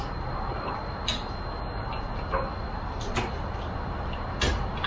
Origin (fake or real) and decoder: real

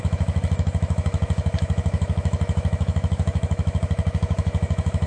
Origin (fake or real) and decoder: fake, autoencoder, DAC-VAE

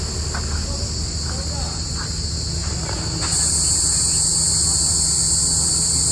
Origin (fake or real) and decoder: real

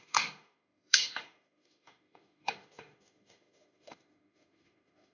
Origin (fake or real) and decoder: fake, autoencoder, DAC-VAE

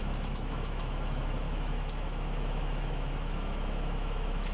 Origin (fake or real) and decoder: fake, autoencoder, DAC-VAE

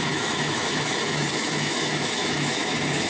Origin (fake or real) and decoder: fake, autoencoder, DAC-VAE